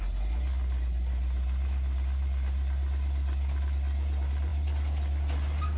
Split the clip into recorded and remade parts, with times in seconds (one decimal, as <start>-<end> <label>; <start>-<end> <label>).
0.0-5.8 recorded